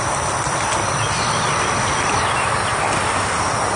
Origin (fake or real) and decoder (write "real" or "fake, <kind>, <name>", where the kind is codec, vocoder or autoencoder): real